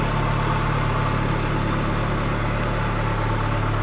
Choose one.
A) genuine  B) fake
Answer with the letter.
A